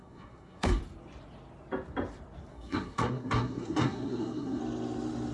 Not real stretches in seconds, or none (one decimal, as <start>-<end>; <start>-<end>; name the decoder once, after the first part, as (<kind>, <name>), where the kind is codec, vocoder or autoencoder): 0.0-0.8 (codec, SNAC); 2.5-4.6